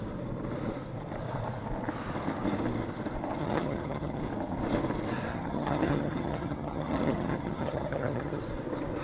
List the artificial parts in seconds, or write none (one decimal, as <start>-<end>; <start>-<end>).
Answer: 3.4-4.2; 5.3-8.4